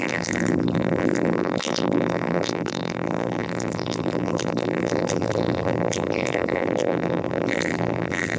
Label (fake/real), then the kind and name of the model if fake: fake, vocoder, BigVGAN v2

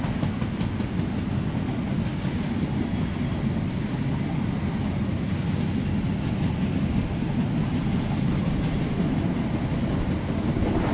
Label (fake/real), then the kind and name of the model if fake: real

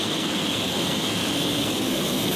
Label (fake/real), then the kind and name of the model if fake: fake, codec, SNAC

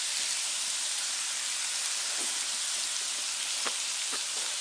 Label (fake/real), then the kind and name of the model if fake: real